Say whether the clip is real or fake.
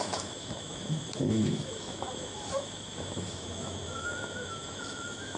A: fake